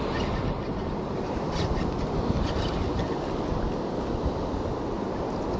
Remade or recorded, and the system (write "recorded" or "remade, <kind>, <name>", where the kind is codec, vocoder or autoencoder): recorded